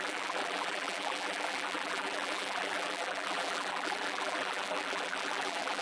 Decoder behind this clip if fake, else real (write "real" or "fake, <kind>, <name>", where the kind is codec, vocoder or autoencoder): fake, vocoder, BigVGAN v2